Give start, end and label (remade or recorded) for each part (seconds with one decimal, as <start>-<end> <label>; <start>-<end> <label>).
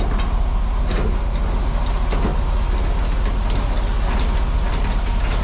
0.0-5.4 recorded